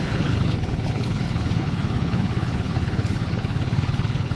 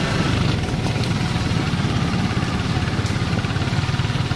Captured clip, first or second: second